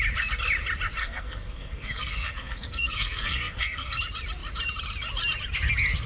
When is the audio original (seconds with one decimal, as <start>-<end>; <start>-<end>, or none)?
0.0-1.0; 4.0-6.1